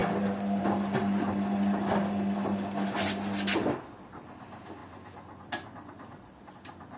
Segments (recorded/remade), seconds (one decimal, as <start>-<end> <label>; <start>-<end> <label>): 0.0-7.0 recorded